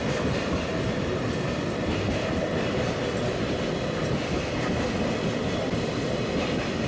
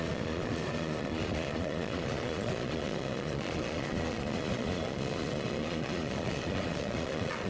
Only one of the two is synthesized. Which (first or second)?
second